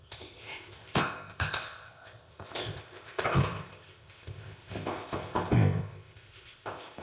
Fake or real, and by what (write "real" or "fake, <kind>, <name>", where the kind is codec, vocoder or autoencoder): fake, codec, ZipCodec